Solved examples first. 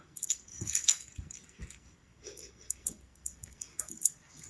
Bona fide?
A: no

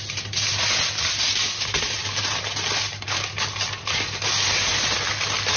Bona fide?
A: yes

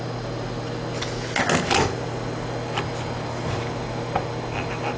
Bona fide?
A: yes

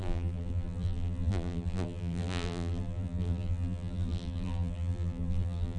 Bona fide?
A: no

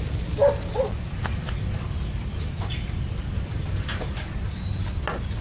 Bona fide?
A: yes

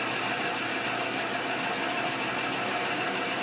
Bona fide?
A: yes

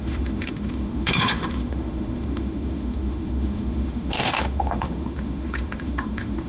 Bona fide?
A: no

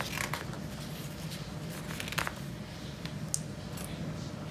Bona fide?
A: yes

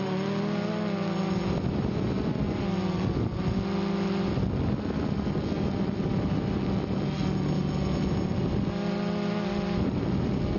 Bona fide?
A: yes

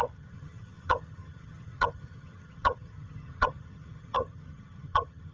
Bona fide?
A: no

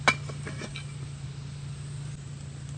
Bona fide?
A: yes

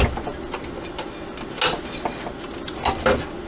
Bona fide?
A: yes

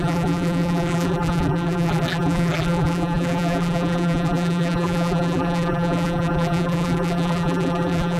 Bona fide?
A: no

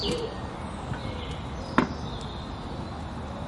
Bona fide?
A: yes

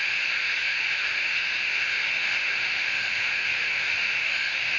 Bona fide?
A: no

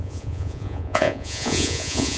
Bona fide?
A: no